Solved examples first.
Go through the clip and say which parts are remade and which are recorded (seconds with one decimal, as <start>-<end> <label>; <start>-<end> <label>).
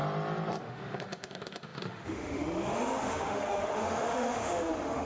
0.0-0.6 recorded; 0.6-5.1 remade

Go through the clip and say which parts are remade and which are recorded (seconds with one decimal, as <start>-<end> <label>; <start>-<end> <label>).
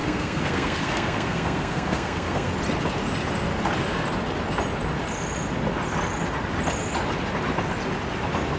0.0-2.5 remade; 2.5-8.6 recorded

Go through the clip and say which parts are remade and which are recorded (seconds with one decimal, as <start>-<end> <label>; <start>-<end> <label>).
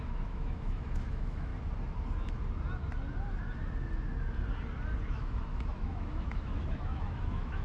0.0-1.5 remade; 1.5-5.1 recorded; 5.1-7.6 remade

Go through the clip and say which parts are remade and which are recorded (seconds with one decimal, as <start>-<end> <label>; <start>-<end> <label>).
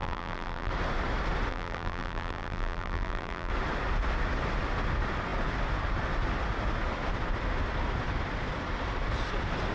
0.0-0.7 remade; 0.7-1.5 recorded; 1.5-3.5 remade; 3.5-9.7 recorded